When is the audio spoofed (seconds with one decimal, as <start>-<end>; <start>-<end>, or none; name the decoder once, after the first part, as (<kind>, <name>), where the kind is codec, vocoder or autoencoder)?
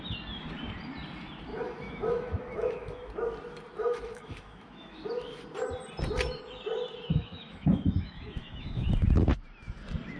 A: 1.5-3.1 (autoencoder, DAC-VAE); 3.8-5.1; 7.1-8.9